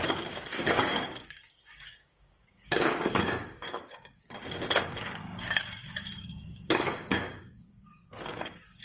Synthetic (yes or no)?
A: yes